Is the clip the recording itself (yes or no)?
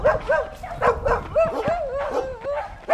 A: yes